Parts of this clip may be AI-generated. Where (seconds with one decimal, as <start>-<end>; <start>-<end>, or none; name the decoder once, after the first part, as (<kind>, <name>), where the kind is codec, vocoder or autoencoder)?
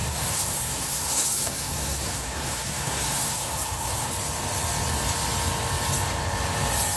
0.0-4.1 (codec, SNAC)